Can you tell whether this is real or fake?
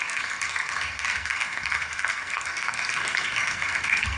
fake